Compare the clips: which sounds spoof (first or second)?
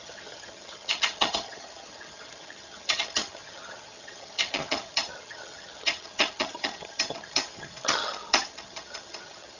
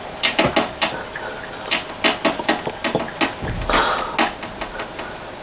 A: first